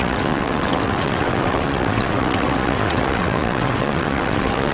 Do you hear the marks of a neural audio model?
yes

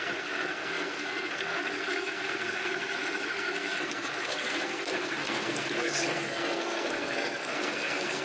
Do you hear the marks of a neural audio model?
yes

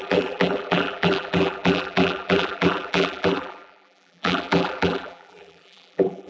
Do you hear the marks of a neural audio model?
yes